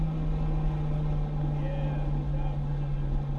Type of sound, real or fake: real